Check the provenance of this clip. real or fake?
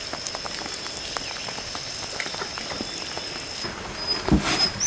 real